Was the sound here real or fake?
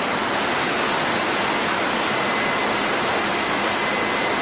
real